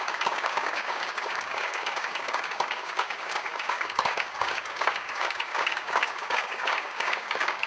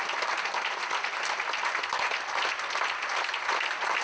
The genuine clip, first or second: second